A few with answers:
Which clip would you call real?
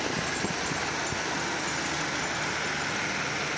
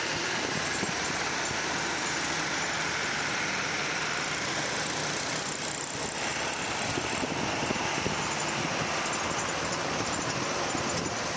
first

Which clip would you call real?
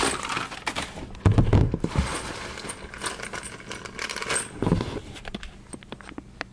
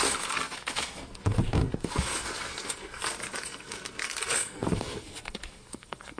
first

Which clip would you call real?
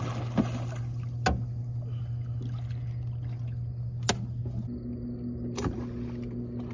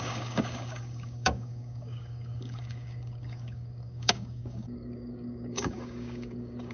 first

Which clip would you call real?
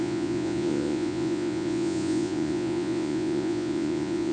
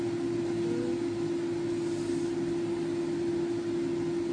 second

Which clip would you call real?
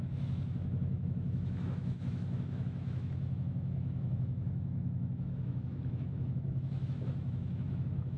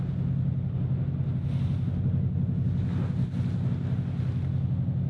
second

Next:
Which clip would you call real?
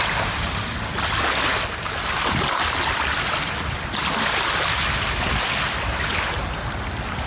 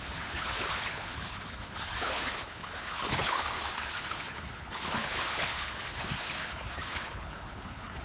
first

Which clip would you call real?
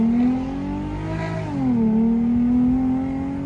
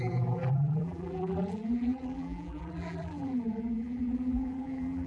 first